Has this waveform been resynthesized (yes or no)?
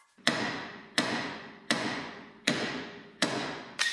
yes